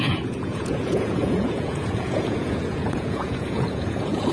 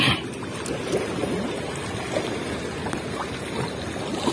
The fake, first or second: first